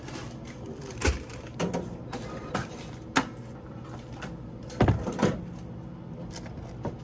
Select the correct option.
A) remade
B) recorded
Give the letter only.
B